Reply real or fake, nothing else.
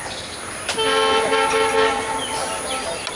real